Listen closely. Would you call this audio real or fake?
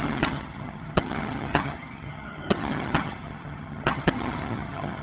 fake